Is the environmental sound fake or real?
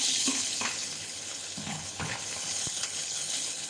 fake